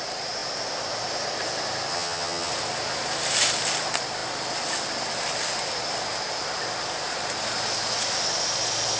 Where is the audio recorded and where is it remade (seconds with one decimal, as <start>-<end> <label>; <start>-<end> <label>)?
0.0-1.9 recorded; 1.9-2.5 remade; 2.5-9.0 recorded